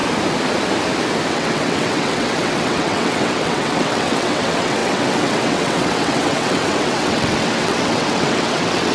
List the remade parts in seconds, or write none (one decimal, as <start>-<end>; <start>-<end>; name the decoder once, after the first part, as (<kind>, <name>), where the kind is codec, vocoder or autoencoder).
1.3-8.9 (vocoder, WaveNeXt)